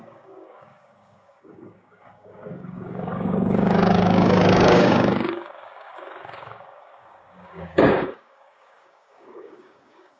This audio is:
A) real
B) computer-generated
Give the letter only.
B